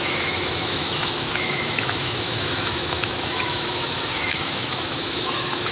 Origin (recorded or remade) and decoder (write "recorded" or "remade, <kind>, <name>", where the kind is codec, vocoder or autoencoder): remade, autoencoder, DAC-VAE